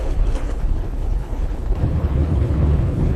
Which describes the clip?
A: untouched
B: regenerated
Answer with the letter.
B